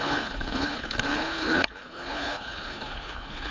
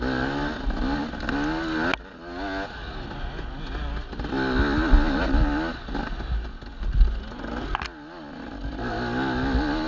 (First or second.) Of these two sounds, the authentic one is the second